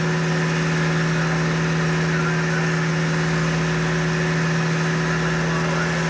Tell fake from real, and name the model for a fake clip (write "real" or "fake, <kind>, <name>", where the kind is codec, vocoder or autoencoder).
real